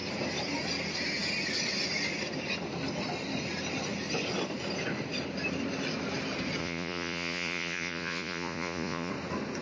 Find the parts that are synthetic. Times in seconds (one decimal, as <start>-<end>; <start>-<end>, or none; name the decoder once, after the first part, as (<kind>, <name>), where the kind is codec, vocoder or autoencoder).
6.6-9.1 (vocoder, Vocos)